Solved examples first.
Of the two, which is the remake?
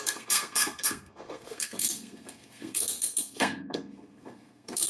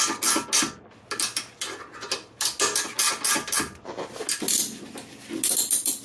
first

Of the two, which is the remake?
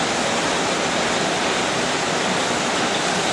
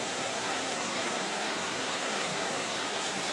second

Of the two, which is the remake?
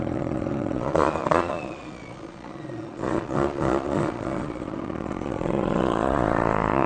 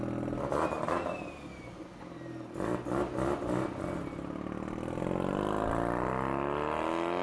first